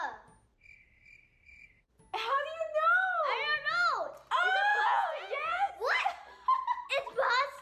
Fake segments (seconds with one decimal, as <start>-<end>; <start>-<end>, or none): 4.7-5.7